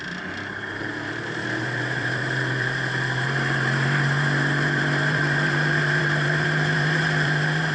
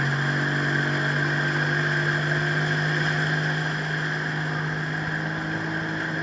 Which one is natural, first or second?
second